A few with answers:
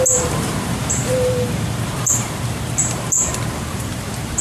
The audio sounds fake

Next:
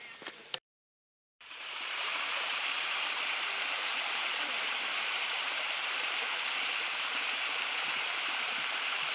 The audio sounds fake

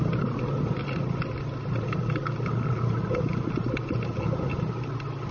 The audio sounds real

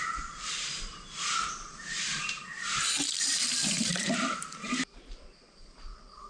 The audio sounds fake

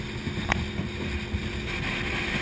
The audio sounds real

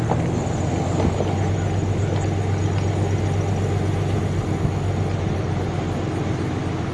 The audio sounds real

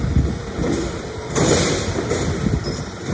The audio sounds fake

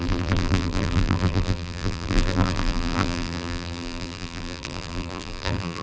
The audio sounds fake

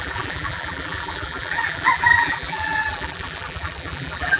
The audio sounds fake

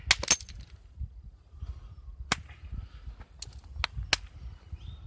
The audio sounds real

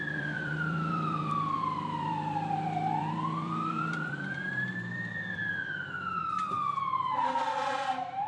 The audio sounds fake